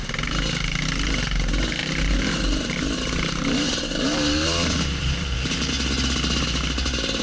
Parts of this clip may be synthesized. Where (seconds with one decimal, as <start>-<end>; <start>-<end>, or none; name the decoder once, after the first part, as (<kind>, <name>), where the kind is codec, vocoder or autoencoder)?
1.8-5.7 (vocoder, BigVGAN v2)